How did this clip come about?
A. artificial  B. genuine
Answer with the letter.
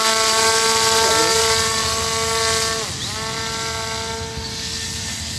B